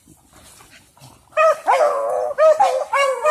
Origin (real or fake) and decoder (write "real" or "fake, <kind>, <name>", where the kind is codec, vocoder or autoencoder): real